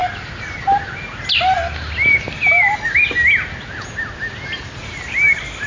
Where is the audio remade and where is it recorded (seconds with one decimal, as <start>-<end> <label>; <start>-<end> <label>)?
0.0-5.7 recorded